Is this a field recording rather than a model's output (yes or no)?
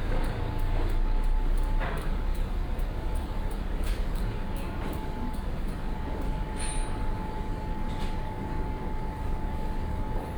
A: no